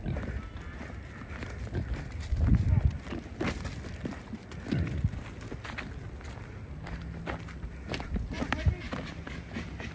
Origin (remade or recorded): recorded